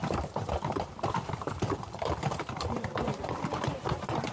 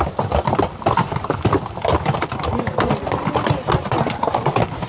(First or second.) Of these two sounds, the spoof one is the first